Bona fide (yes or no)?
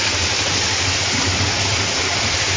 yes